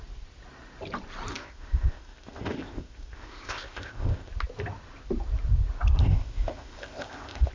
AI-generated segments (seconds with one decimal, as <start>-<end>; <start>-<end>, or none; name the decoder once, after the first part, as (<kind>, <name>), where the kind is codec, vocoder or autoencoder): 1.3-4.3 (codec, ZipCodec); 6.0-7.5